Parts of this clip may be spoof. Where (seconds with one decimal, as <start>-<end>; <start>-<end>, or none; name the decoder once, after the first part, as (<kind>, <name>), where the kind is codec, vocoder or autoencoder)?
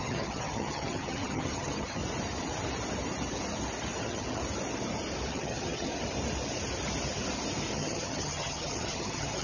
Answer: 0.0-2.0 (vocoder, HiFi-GAN); 4.0-4.4; 5.3-5.9; 7.7-9.4